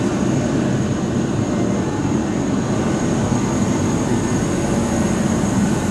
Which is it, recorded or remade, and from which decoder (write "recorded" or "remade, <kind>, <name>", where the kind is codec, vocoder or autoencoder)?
recorded